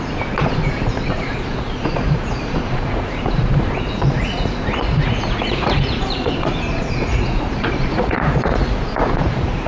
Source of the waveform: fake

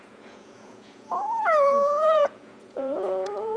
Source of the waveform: fake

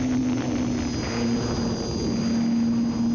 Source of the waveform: real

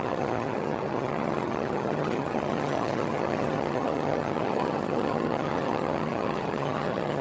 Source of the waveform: fake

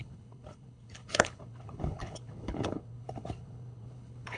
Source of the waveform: fake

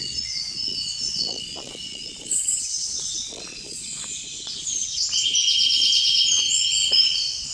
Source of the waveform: fake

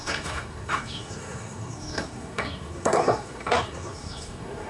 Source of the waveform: fake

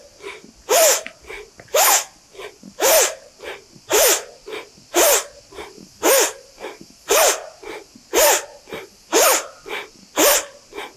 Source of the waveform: real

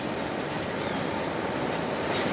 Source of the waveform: real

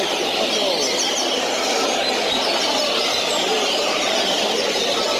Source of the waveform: real